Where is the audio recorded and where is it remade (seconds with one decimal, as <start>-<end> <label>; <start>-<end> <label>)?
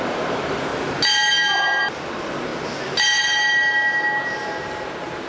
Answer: 0.0-0.7 remade; 0.7-2.1 recorded; 2.1-2.5 remade; 2.5-4.3 recorded; 4.3-5.3 remade